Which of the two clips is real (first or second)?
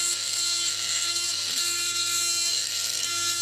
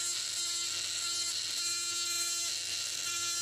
second